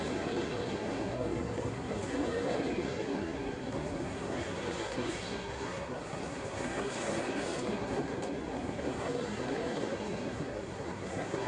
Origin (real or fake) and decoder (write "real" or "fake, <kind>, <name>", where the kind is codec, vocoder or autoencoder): fake, codec, SNAC